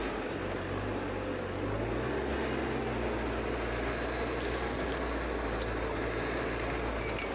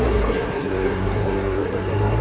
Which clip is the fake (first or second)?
second